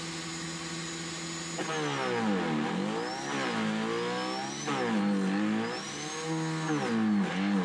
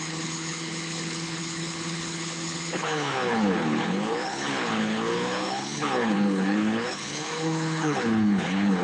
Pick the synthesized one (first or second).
second